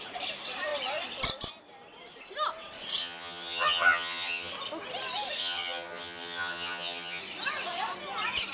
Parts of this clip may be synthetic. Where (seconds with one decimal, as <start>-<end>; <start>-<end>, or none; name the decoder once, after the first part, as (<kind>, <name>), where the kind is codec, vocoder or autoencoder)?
3.0-4.5 (vocoder, HiFi-GAN); 5.4-7.2